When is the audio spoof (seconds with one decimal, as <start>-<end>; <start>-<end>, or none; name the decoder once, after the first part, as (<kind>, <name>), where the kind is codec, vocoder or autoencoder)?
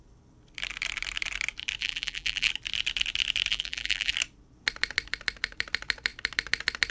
1.8-2.5 (vocoder, BigVGAN v2); 3.5-4.1